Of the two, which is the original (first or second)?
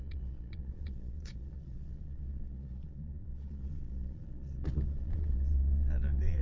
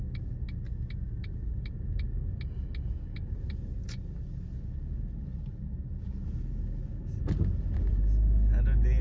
second